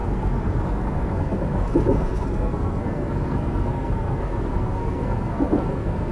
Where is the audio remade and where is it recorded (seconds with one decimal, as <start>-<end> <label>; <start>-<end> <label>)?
0.0-6.1 remade

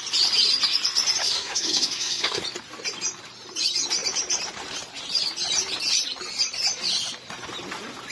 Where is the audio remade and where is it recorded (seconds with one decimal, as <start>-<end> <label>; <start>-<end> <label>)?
0.0-1.2 recorded; 1.2-2.4 remade; 2.4-8.1 recorded

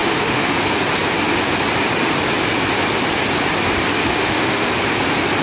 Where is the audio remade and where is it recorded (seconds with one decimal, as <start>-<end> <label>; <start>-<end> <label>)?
0.0-0.5 remade; 0.5-4.0 recorded; 4.0-4.7 remade; 4.7-5.4 recorded

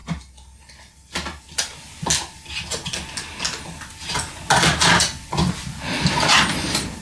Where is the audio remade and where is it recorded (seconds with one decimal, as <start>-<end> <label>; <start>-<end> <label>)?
0.0-7.0 recorded

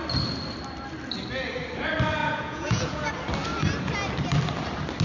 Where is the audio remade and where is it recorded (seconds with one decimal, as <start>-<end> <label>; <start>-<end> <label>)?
0.0-2.2 recorded; 2.2-3.1 remade; 3.1-5.0 recorded